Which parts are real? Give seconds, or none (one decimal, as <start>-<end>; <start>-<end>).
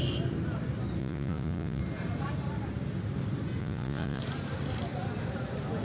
0.0-1.0; 1.8-3.6; 4.2-5.8